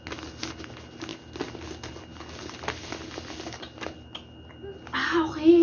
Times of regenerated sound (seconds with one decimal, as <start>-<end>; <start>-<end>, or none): none